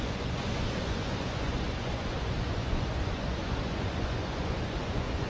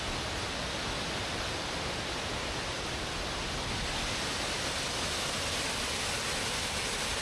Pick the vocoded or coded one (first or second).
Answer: first